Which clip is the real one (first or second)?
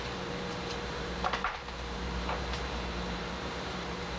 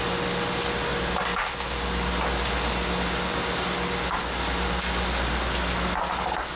second